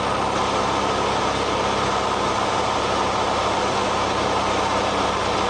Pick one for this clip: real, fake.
real